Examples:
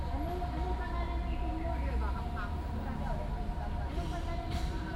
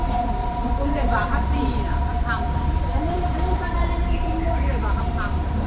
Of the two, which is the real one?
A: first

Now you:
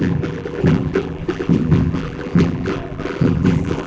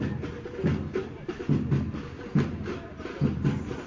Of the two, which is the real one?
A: second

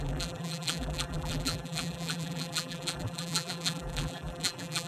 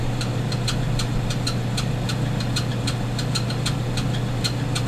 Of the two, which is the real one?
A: second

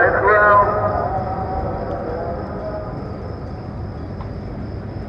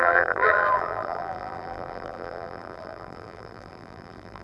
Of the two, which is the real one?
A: first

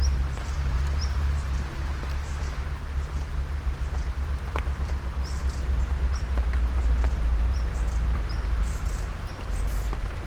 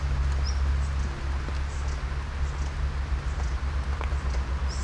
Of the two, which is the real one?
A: second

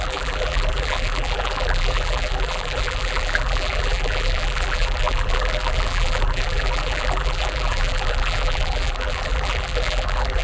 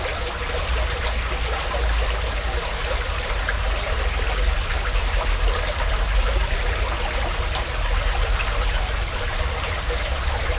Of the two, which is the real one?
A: second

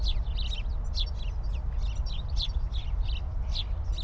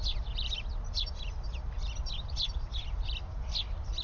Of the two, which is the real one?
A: first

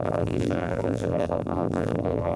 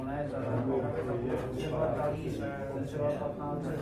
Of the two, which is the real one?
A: second